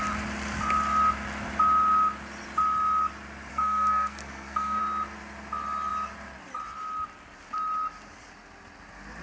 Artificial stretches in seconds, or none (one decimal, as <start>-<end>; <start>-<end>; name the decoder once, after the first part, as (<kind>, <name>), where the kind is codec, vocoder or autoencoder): 3.5-4.8 (codec, SNAC)